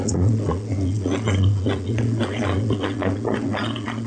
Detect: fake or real fake